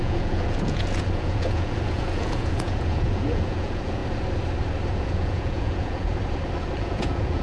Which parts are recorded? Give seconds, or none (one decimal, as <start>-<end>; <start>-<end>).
4.0-4.9; 6.1-6.8